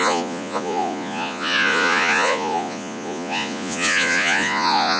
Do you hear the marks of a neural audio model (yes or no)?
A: yes